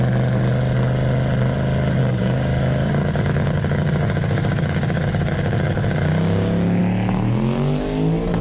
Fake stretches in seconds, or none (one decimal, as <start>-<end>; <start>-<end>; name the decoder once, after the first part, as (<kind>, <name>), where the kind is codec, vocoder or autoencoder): 2.0-6.8 (codec, DAC)